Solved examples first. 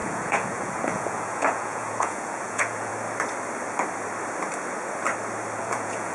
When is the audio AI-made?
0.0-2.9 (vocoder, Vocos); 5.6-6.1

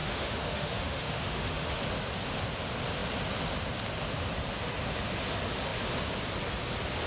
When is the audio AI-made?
0.0-1.8 (autoencoder, DAC-VAE)

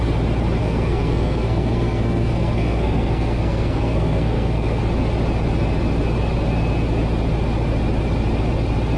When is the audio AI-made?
0.6-4.8 (codec, SNAC)